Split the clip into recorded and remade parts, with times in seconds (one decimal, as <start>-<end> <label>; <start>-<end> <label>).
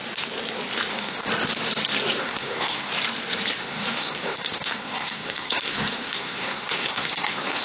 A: 0.0-0.9 recorded; 0.9-1.3 remade; 1.3-2.2 recorded; 2.2-2.9 remade; 2.9-3.6 recorded; 3.6-7.6 remade